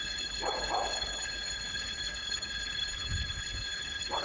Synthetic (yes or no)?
yes